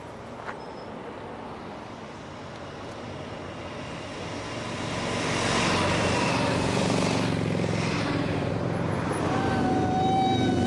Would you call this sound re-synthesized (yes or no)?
no